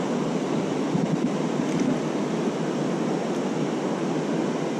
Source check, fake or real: real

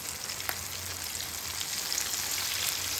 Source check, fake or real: real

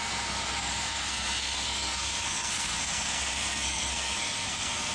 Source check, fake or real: fake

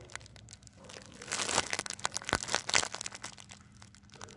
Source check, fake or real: real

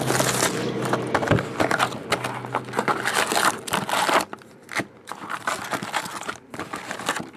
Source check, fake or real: real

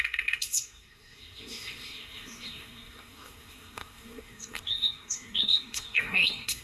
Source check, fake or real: fake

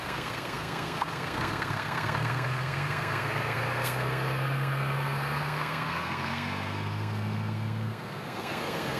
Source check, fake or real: fake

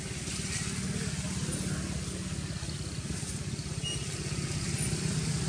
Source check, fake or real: real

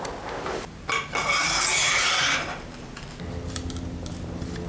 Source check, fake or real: real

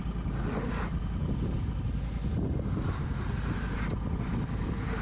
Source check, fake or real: real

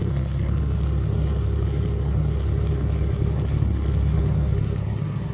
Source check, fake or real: fake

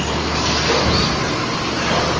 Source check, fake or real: real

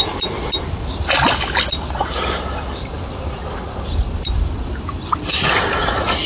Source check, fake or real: real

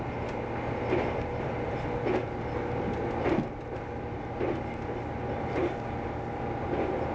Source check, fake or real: real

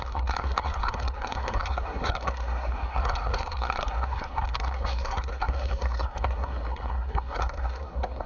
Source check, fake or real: fake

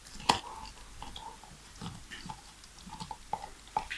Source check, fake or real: real